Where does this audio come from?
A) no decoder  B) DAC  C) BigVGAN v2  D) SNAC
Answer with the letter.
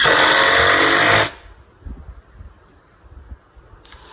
A